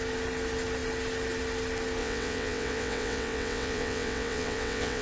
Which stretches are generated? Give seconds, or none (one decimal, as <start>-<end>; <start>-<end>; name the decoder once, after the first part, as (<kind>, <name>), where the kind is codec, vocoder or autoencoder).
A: 2.0-5.0 (vocoder, WaveNeXt)